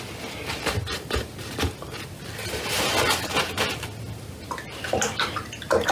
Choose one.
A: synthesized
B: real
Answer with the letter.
B